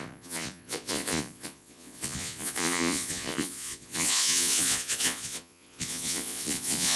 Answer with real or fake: fake